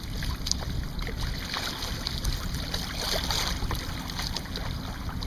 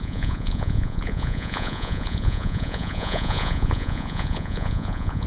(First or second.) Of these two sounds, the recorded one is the first